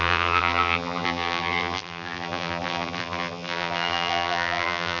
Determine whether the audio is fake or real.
fake